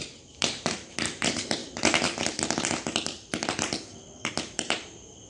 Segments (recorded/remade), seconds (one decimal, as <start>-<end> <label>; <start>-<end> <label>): 0.0-1.6 remade; 1.6-4.3 recorded; 4.3-5.3 remade